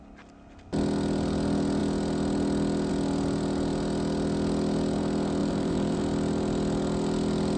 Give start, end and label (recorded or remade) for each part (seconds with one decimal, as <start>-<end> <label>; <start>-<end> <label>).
0.0-5.4 recorded; 5.4-6.0 remade; 6.0-7.6 recorded